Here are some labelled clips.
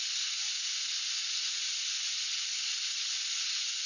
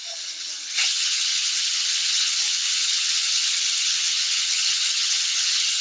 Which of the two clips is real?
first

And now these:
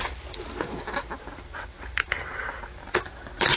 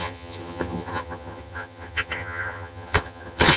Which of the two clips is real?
first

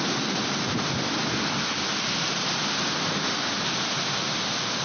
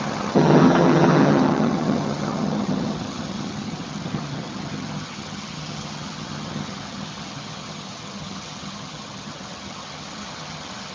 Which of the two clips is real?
first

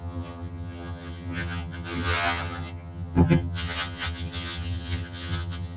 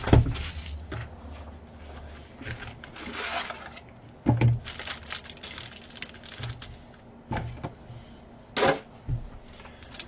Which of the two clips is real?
second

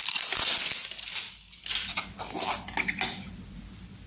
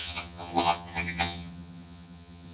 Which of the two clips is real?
first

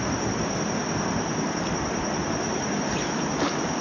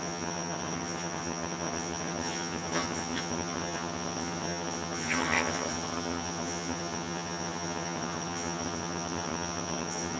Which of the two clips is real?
first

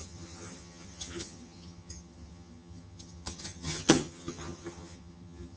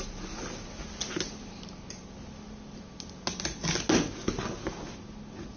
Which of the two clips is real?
second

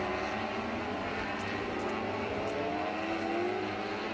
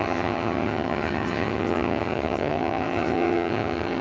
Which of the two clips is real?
first